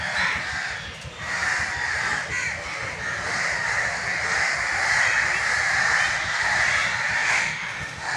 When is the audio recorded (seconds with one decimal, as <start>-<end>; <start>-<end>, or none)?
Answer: 0.0-7.2